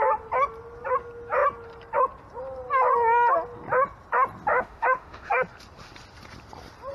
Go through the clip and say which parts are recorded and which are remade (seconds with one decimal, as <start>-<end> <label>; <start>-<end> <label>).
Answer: 0.0-4.5 recorded; 4.5-5.3 remade; 5.3-6.9 recorded